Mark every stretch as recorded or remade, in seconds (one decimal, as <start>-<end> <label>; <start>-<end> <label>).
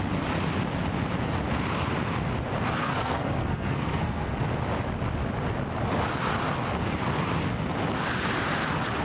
0.0-2.8 recorded; 2.8-4.3 remade; 4.3-9.0 recorded